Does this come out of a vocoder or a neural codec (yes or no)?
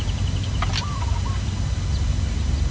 no